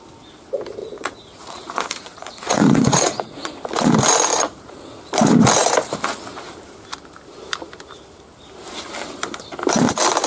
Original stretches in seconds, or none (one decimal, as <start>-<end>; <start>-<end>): 0.0-0.8; 3.5-4.3; 5.0-10.3